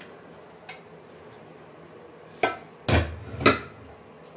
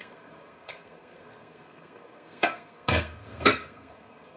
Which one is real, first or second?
first